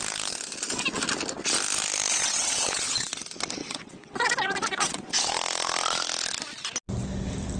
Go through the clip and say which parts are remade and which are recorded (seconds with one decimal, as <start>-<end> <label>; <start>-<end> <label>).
0.0-2.1 recorded; 2.1-3.1 remade; 3.1-3.6 recorded; 3.6-5.1 remade; 5.1-7.6 recorded